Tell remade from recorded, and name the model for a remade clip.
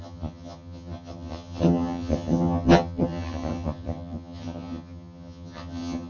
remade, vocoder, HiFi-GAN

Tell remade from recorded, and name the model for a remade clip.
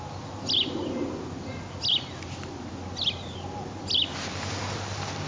recorded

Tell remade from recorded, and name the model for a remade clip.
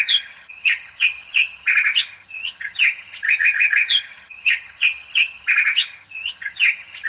remade, vocoder, HiFi-GAN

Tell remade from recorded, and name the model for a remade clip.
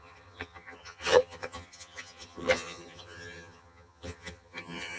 remade, vocoder, HiFi-GAN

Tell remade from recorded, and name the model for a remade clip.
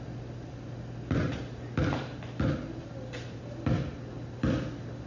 recorded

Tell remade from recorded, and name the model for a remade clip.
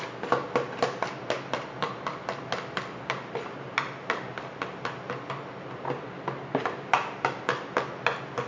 recorded